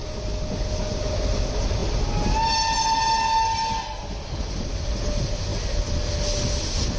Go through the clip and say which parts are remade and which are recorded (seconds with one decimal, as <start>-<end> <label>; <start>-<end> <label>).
0.0-7.0 recorded